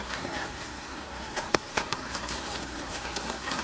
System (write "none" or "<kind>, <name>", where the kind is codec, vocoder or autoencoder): codec, SNAC